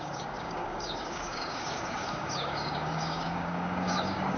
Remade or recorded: remade